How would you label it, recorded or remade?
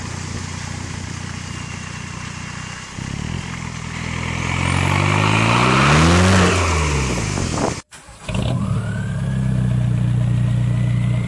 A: recorded